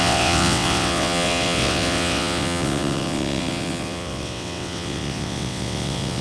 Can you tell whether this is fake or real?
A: fake